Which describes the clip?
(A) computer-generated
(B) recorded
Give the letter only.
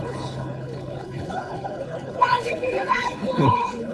A